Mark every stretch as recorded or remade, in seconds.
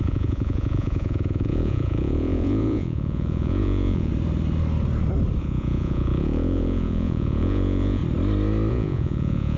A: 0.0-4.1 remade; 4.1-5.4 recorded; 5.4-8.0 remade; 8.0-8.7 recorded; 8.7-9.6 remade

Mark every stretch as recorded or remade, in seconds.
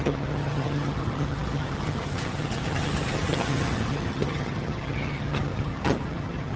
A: 0.0-6.6 remade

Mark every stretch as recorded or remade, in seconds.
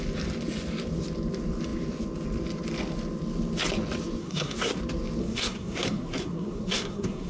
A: 0.0-4.2 recorded; 4.2-4.8 remade; 4.8-5.2 recorded; 5.2-7.3 remade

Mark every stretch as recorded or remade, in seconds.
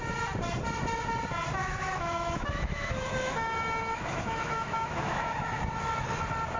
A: 0.0-1.6 recorded; 1.6-5.6 remade; 5.6-6.6 recorded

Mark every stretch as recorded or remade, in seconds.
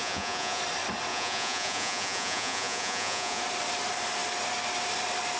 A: 0.0-0.6 remade; 0.6-1.1 recorded; 1.1-3.4 remade; 3.4-5.4 recorded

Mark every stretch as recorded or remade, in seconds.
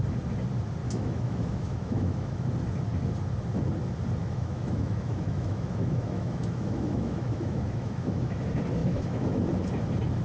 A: 0.0-0.8 recorded; 0.8-2.5 remade; 2.5-4.2 recorded; 4.2-8.4 remade; 8.4-8.8 recorded; 8.8-9.4 remade; 9.4-10.2 recorded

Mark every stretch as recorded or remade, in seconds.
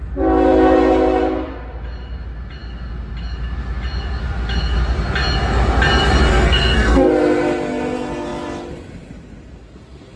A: 0.0-6.3 recorded; 6.3-7.1 remade; 7.1-10.2 recorded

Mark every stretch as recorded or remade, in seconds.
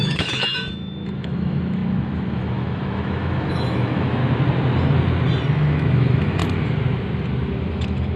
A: 0.0-4.2 remade; 4.2-5.5 recorded; 5.5-6.4 remade; 6.4-7.7 recorded; 7.7-8.2 remade